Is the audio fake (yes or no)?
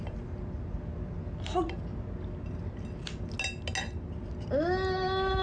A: no